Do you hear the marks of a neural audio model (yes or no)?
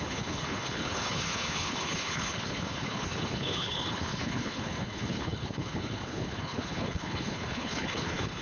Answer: yes